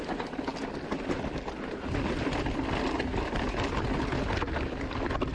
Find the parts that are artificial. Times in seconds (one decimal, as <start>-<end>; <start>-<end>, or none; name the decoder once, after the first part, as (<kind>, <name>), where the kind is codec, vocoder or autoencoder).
none